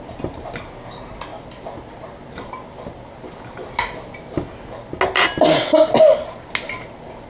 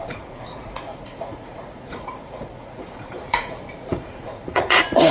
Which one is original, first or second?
first